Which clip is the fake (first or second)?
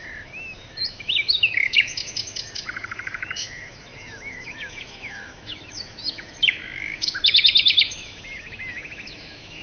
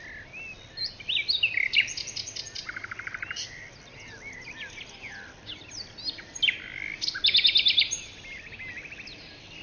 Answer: first